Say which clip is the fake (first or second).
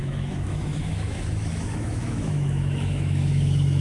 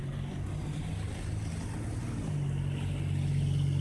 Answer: first